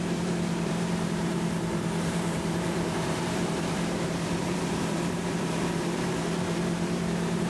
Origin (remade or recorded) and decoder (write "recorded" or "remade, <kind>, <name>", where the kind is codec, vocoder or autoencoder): remade, vocoder, BigVGAN v2